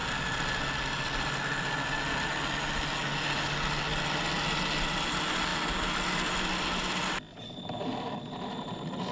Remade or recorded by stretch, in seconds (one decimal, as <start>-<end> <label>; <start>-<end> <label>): 0.0-9.1 recorded